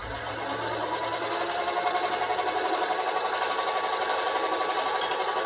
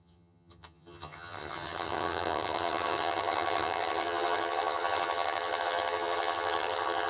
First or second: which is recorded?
first